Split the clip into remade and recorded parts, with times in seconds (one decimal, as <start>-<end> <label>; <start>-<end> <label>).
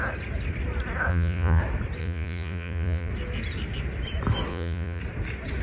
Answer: 0.0-1.1 recorded; 1.1-1.6 remade; 1.6-2.0 recorded; 2.0-3.1 remade; 3.1-4.5 recorded; 4.5-5.0 remade; 5.0-5.6 recorded